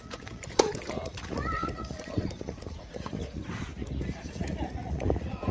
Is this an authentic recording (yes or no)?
no